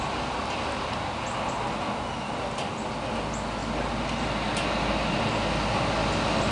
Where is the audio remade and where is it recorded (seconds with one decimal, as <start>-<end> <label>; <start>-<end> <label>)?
0.0-6.5 recorded